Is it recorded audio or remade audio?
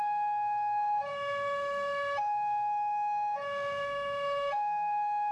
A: remade